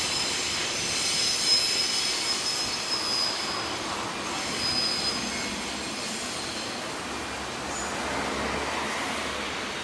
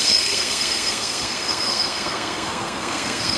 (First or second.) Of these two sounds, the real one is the first